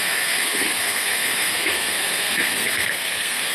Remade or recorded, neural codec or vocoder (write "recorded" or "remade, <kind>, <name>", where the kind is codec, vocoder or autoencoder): remade, codec, SNAC